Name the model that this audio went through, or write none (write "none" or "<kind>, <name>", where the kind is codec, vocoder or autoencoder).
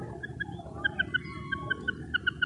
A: none